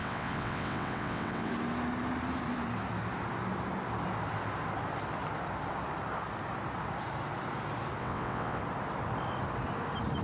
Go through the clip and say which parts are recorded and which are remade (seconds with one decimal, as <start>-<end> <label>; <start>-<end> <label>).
0.0-1.5 remade; 1.5-8.0 recorded; 8.0-8.6 remade; 8.6-10.2 recorded